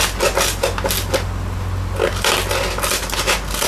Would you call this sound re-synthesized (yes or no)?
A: no